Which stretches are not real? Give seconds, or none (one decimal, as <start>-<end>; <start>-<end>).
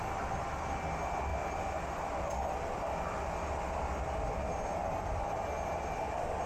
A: none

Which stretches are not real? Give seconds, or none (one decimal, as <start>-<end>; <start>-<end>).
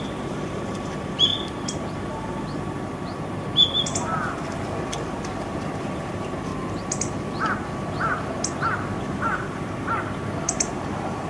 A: 0.0-1.3; 5.8-6.5; 9.0-11.3